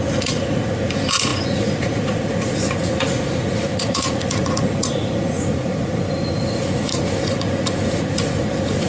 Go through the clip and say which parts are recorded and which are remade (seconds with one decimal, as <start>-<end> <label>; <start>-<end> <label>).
0.0-8.9 remade